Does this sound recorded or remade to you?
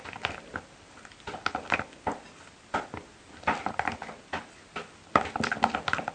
recorded